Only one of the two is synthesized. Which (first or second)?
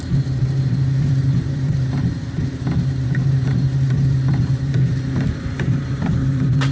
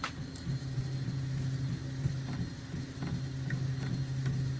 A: first